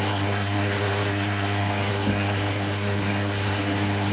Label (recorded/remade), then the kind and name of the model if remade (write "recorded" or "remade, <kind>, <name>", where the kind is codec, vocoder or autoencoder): remade, codec, SNAC